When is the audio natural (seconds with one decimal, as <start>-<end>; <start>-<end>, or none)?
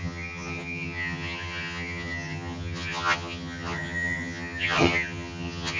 none